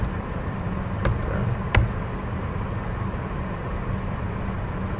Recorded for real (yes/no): yes